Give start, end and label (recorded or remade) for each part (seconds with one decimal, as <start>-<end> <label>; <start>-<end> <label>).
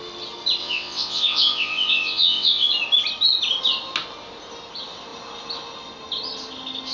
0.0-0.6 recorded; 0.6-2.7 remade; 2.7-6.9 recorded